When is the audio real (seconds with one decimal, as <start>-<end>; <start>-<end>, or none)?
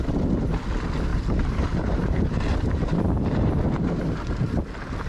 0.0-1.1; 4.1-5.1